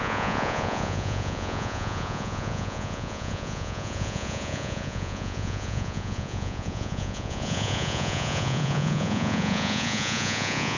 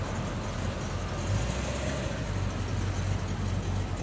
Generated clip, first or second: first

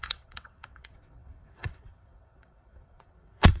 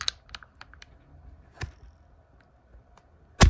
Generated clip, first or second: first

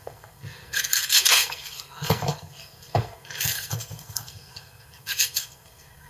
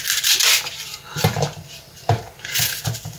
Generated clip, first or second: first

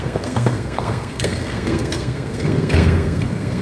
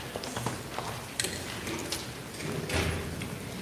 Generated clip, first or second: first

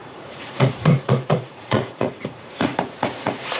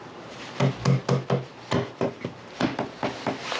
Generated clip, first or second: first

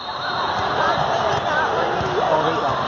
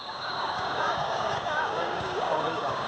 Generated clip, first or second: second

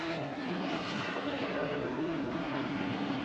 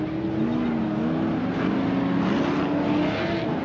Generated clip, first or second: first